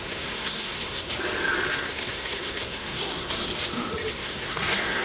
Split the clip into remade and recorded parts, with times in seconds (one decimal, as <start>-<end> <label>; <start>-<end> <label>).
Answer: 0.0-1.1 remade; 1.1-1.7 recorded; 1.7-3.5 remade; 3.5-4.1 recorded; 4.1-5.0 remade